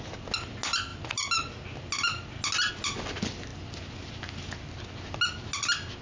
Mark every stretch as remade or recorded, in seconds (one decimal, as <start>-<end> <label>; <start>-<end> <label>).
0.0-6.0 recorded